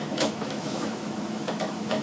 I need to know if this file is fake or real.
fake